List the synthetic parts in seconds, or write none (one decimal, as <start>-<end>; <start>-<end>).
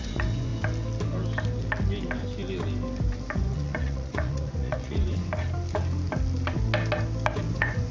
0.0-0.5; 3.3-5.3; 7.5-7.9